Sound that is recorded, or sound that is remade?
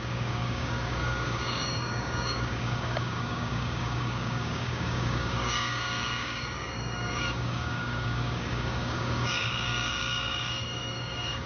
remade